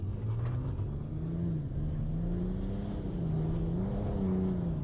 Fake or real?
real